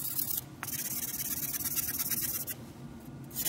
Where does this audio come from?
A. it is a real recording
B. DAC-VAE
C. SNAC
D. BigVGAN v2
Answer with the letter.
A